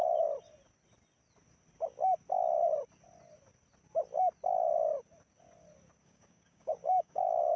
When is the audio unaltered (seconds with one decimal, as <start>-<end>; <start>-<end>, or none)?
0.0-6.0